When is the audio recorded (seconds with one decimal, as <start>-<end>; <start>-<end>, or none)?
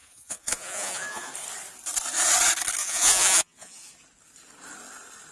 1.3-2.8; 3.9-5.3